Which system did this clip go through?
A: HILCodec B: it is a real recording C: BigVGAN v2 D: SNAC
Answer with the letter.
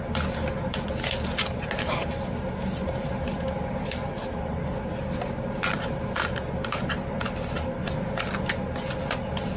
B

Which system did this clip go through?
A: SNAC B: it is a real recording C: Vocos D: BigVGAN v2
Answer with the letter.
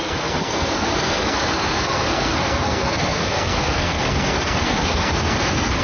A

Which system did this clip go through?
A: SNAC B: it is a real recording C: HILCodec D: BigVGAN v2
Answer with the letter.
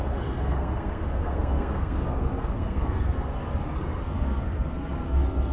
A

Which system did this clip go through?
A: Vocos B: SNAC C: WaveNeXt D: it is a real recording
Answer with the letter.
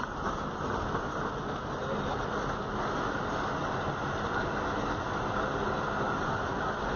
D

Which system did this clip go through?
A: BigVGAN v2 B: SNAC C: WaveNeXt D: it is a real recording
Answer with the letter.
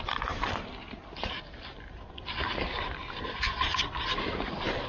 D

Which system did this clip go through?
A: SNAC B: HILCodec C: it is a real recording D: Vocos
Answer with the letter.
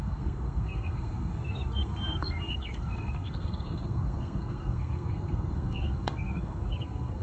A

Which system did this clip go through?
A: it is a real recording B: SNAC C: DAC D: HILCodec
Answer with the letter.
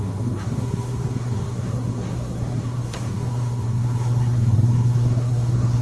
B